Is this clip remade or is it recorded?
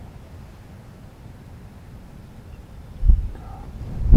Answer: recorded